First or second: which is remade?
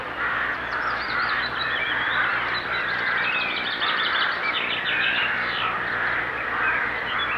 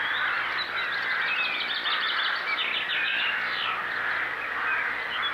first